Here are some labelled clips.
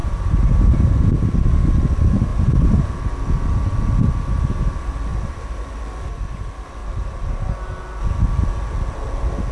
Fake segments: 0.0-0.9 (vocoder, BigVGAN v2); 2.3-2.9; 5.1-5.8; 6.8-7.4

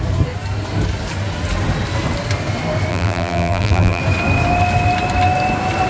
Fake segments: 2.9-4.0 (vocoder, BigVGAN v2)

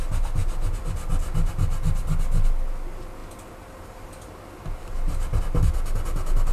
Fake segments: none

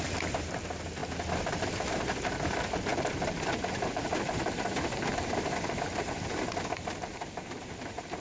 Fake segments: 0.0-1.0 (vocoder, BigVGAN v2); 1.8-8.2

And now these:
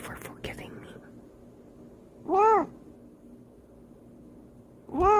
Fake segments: none

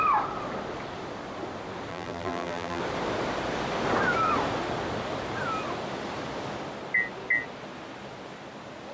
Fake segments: 1.9-2.8 (vocoder, BigVGAN v2)

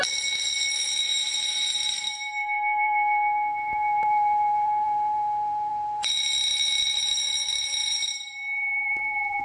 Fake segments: 1.1-6.1 (vocoder, BigVGAN v2); 7.8-9.4

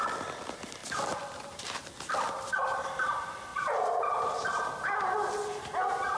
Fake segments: 0.8-2.5 (vocoder, BigVGAN v2)